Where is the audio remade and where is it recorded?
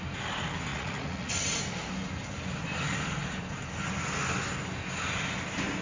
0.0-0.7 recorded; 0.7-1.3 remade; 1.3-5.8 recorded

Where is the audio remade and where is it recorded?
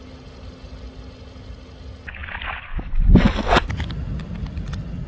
0.0-5.1 recorded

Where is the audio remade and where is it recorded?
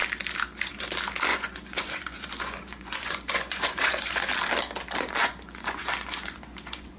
0.0-1.3 recorded; 1.3-4.3 remade; 4.3-5.2 recorded; 5.2-7.0 remade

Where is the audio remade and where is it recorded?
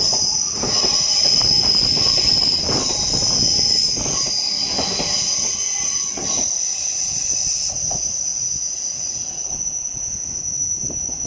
0.0-11.3 recorded